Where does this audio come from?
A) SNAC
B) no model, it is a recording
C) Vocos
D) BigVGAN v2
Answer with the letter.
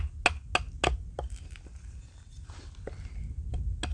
B